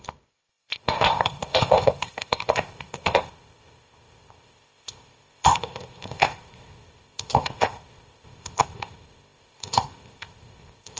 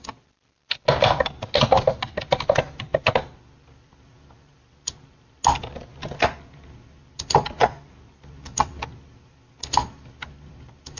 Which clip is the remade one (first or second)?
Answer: first